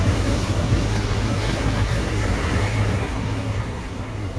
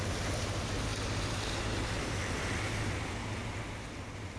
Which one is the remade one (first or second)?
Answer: first